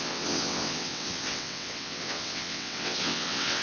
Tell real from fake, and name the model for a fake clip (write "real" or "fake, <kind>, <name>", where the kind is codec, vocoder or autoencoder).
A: fake, vocoder, WaveNeXt